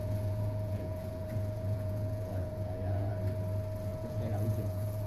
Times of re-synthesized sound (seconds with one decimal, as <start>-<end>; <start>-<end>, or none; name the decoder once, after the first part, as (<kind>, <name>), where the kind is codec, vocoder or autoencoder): 0.0-3.1 (vocoder, Vocos); 3.9-5.1